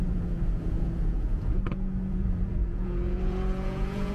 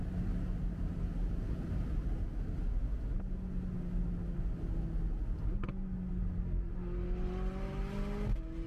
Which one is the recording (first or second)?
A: second